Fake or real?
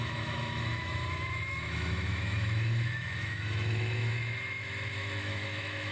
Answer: fake